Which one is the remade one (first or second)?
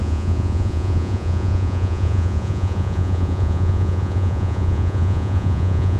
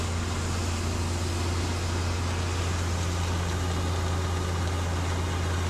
first